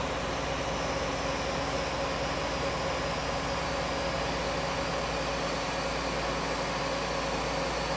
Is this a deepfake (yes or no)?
no